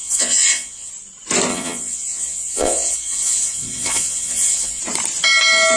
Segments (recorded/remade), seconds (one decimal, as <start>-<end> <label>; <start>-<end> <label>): 0.0-0.9 remade; 0.9-1.5 recorded; 1.5-4.8 remade; 4.8-5.8 recorded